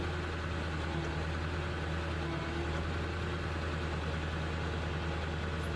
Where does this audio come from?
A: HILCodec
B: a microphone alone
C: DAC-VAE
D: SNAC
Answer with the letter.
B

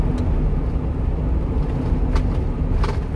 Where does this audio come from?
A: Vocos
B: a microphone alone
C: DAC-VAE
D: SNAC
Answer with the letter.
B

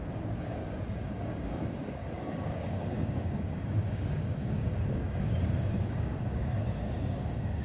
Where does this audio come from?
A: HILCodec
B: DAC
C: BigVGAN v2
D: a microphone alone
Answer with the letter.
B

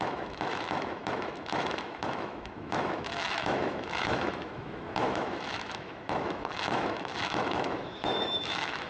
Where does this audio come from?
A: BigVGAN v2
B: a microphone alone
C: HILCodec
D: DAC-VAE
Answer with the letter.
D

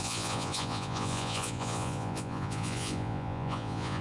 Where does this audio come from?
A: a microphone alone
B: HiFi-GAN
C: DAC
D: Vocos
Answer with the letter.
D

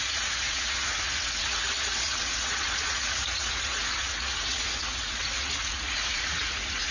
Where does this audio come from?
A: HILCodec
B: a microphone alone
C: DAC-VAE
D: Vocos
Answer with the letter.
D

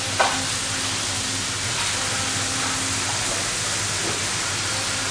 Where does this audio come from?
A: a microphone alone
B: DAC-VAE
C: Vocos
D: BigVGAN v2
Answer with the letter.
A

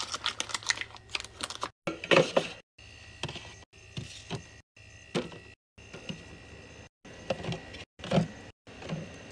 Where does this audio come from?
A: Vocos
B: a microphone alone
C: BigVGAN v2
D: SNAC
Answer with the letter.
B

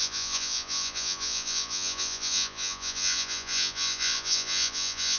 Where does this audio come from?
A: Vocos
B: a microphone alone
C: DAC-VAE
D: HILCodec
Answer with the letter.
A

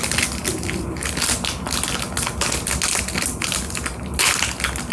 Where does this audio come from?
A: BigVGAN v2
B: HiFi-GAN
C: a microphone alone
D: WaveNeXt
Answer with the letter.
C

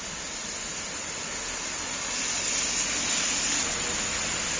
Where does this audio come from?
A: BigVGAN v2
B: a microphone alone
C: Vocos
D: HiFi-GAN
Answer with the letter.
B